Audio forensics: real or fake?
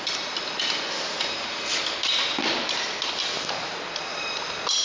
real